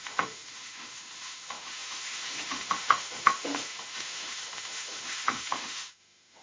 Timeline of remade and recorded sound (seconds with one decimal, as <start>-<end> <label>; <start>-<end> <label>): 0.0-6.4 remade